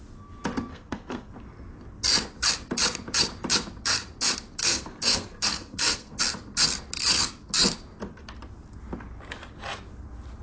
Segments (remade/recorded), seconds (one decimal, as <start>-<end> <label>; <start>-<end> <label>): 0.0-0.7 recorded; 0.7-1.3 remade; 1.3-4.6 recorded; 4.6-6.2 remade; 6.2-10.4 recorded